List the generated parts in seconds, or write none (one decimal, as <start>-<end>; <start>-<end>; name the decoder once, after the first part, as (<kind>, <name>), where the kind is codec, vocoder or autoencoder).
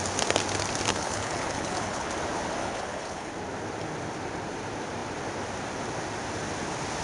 0.9-2.1 (codec, HILCodec); 2.6-3.3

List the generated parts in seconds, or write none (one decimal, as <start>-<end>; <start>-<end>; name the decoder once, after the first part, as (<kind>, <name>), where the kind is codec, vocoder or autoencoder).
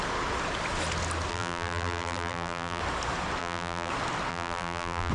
1.3-2.8 (vocoder, BigVGAN v2); 3.4-3.9; 4.3-5.1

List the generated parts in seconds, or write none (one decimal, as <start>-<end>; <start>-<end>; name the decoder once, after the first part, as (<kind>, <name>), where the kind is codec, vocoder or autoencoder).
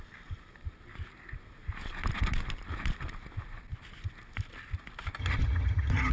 5.2-6.1 (vocoder, HiFi-GAN)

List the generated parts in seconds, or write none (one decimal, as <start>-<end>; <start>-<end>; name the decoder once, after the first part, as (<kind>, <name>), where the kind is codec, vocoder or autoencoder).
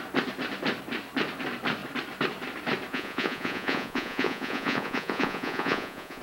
2.9-6.2 (vocoder, Vocos)